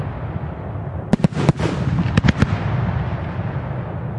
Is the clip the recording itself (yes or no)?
yes